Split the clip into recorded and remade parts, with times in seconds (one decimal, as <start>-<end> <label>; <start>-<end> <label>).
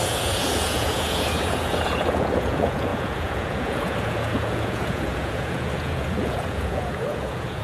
0.0-7.6 remade